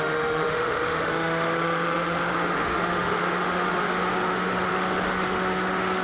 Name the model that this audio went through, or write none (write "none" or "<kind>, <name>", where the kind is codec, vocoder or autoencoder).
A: autoencoder, DAC-VAE